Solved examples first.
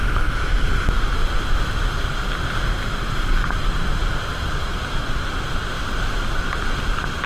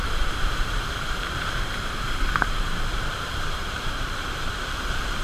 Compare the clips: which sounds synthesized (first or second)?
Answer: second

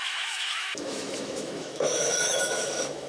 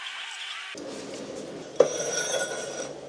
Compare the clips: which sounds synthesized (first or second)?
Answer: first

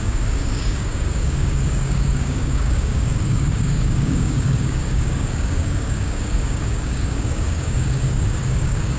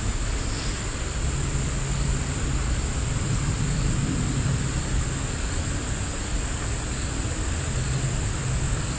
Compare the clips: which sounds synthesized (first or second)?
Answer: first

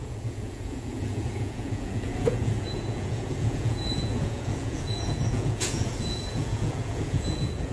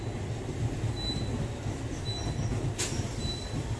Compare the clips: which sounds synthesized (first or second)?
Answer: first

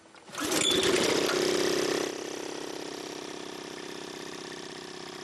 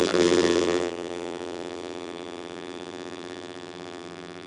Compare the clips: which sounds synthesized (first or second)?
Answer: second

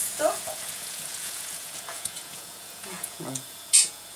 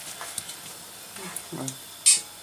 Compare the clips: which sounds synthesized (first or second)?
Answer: first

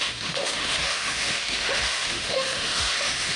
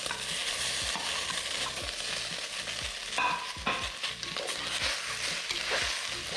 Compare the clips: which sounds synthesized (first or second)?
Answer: first